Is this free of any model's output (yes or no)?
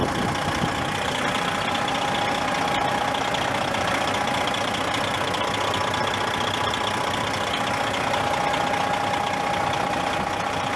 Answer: yes